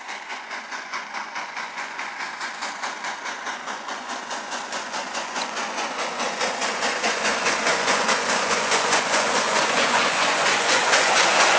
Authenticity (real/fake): fake